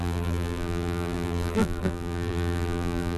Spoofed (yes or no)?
yes